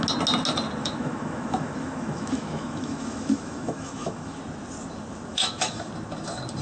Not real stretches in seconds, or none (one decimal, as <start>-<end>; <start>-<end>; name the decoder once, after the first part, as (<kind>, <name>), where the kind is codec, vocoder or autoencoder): 0.8-4.4 (autoencoder, DAC-VAE); 5.3-5.9